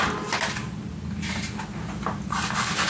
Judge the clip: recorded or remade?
recorded